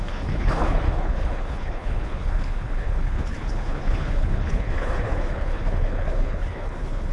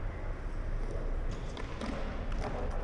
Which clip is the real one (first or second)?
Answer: second